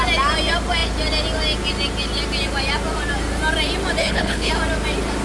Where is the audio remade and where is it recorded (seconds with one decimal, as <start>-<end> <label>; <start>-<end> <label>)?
0.0-4.0 recorded; 4.0-4.5 remade; 4.5-5.2 recorded